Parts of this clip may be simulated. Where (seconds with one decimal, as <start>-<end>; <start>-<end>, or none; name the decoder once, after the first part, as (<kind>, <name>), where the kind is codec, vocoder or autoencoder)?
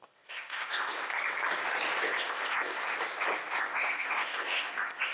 0.0-1.1 (codec, ZipCodec); 2.0-2.8; 3.6-5.1